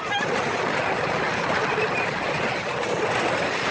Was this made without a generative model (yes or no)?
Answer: yes